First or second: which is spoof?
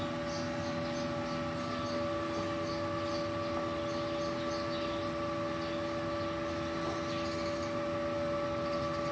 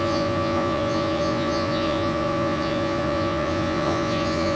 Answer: second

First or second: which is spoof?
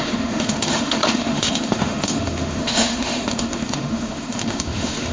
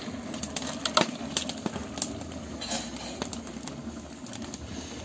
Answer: first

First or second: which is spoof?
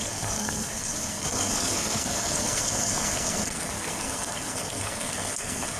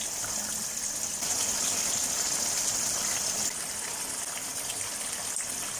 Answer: first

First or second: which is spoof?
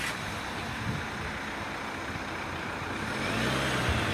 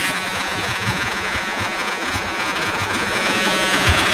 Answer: second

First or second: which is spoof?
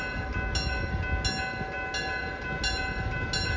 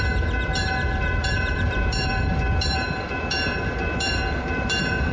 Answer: second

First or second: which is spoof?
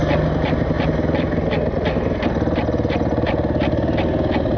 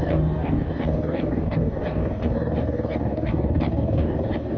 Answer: second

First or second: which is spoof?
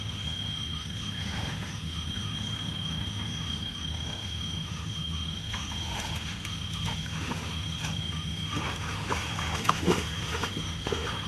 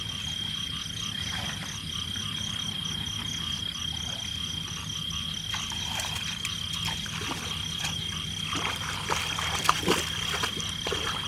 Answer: first